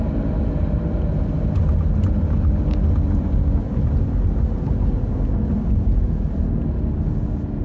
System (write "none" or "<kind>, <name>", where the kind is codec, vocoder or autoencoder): none